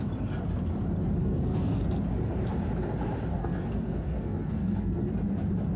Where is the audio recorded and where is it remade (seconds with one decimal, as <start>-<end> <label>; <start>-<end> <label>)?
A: 0.0-1.2 recorded; 1.2-1.7 remade; 1.7-3.3 recorded; 3.3-5.1 remade; 5.1-5.8 recorded